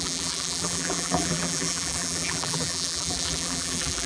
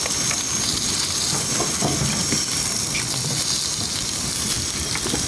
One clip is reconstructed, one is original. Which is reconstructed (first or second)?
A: first